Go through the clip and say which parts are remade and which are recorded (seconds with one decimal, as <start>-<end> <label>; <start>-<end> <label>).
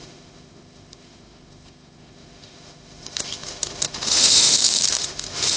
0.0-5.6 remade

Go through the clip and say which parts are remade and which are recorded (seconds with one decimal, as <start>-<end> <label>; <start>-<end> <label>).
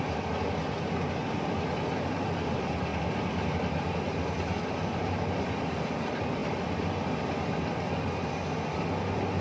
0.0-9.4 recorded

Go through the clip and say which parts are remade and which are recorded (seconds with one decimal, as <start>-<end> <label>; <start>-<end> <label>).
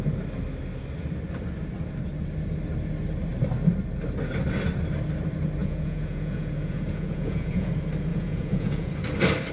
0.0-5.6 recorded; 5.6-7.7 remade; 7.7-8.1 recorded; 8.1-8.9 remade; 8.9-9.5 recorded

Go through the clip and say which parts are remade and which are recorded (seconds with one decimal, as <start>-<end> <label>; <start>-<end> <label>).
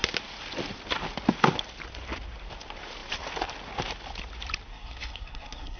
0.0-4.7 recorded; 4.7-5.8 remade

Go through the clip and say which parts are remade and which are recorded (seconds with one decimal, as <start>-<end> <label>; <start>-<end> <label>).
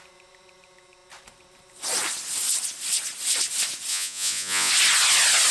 0.0-3.9 recorded; 3.9-4.7 remade; 4.7-5.5 recorded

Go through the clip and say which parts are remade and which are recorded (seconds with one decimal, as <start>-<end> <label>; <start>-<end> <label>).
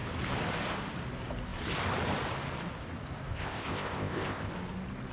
0.0-3.3 recorded; 3.3-4.5 remade; 4.5-5.1 recorded